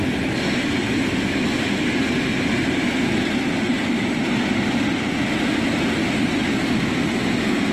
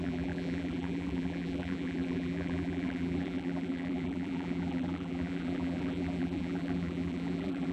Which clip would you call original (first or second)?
first